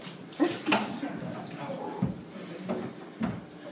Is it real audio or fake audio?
real